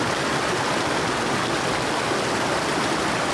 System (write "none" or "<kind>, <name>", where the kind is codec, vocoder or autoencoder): none